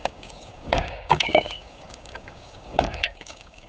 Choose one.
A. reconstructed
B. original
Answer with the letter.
A